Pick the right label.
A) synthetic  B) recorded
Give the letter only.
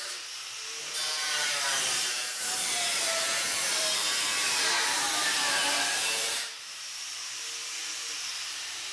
A